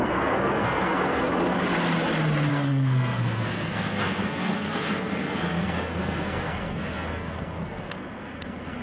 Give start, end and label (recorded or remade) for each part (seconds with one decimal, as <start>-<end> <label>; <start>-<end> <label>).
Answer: 0.0-1.3 remade; 1.3-2.5 recorded; 2.5-8.8 remade